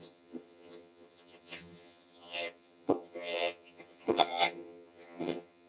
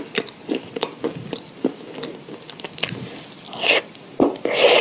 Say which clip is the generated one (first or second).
first